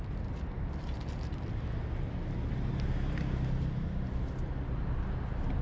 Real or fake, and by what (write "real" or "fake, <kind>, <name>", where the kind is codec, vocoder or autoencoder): real